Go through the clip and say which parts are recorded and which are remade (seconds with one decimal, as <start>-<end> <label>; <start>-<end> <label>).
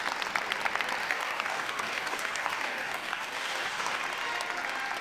0.0-1.0 recorded; 1.0-4.0 remade; 4.0-5.0 recorded